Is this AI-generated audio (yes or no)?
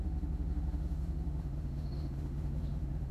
yes